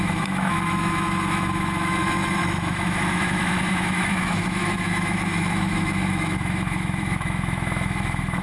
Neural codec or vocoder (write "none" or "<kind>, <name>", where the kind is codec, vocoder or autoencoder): autoencoder, DAC-VAE